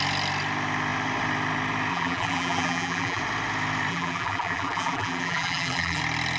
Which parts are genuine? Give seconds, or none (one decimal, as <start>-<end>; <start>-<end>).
0.0-1.9; 3.2-3.9; 6.0-6.4